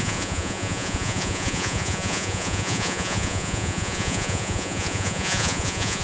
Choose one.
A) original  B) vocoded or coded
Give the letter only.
B